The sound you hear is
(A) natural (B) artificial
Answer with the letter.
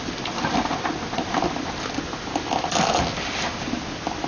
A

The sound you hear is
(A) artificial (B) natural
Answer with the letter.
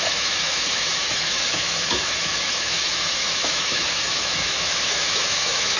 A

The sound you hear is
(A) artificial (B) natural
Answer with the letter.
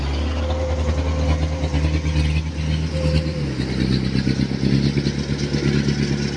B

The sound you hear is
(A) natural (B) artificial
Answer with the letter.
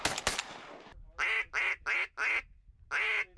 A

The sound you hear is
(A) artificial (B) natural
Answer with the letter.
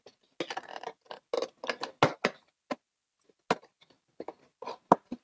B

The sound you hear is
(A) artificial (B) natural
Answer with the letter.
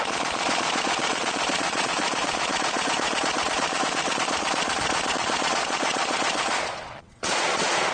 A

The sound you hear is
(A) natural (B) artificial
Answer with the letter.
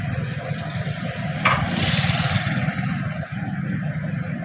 A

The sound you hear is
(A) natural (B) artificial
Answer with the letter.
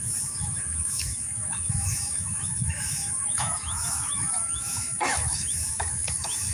B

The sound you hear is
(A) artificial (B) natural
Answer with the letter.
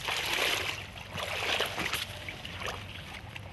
B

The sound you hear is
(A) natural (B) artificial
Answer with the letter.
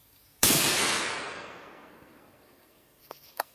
B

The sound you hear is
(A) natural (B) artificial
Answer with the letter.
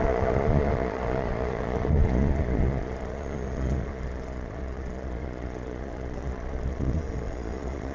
B